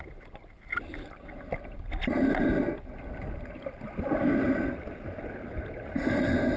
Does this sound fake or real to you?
real